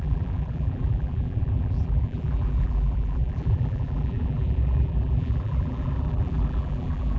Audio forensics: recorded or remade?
remade